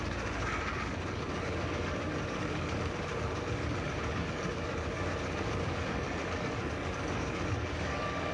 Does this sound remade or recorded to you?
remade